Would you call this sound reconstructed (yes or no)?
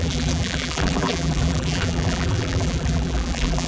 yes